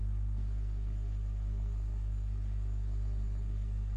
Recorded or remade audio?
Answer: remade